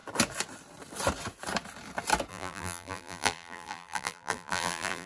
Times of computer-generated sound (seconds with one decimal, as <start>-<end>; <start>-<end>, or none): 2.3-5.1